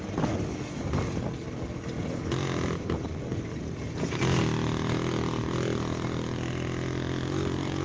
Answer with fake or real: real